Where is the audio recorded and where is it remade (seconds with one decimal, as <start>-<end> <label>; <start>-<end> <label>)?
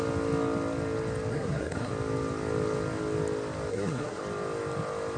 0.0-1.3 recorded; 1.3-1.9 remade; 1.9-3.7 recorded; 3.7-4.2 remade; 4.2-5.2 recorded